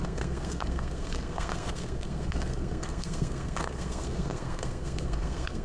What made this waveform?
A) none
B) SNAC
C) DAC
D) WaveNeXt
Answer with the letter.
B